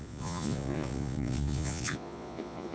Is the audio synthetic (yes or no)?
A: yes